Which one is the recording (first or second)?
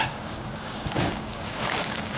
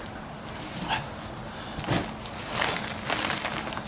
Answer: second